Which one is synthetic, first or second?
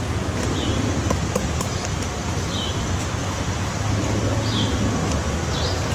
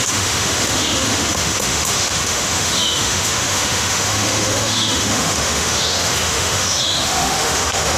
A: second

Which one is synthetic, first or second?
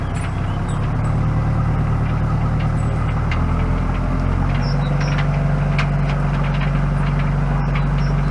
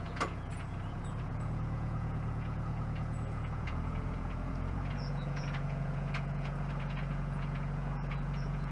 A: second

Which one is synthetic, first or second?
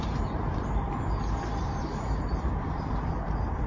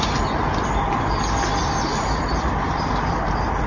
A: first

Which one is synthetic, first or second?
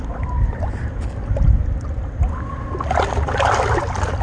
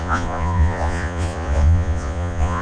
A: second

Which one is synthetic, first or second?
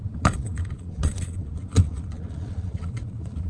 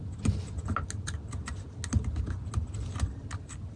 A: first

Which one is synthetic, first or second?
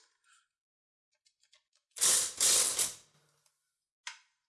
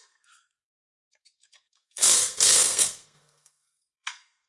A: second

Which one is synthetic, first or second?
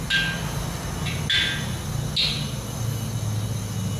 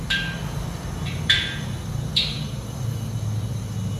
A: second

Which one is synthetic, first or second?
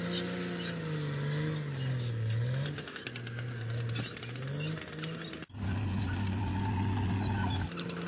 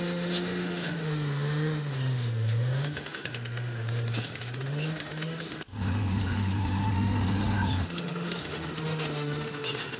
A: second